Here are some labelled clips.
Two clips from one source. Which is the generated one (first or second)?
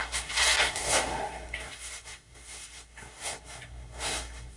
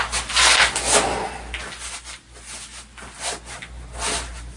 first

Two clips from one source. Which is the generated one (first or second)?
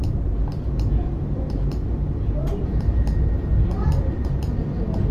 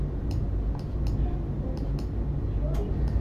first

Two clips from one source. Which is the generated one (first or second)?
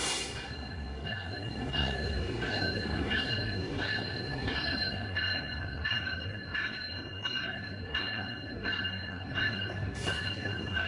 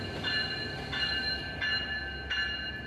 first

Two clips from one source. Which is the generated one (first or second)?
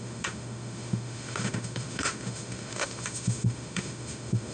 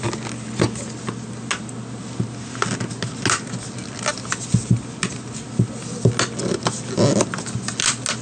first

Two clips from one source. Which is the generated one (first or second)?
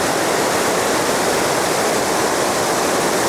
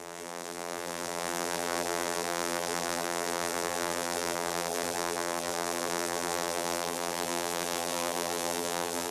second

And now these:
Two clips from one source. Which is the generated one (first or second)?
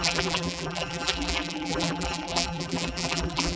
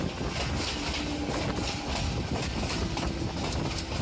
first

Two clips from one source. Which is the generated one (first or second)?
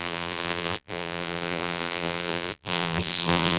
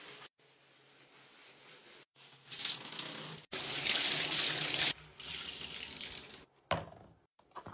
first